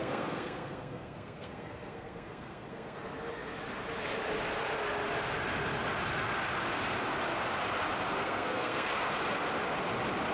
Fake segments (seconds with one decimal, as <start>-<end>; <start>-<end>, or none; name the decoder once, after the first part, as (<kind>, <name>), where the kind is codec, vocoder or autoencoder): 0.0-3.0 (codec, SNAC); 8.2-8.9